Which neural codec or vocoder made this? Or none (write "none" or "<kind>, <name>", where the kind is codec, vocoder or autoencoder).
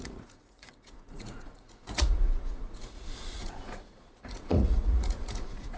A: vocoder, Vocos